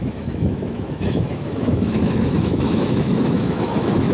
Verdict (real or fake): fake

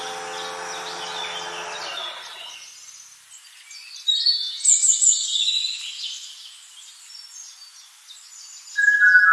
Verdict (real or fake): real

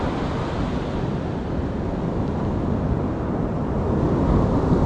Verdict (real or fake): real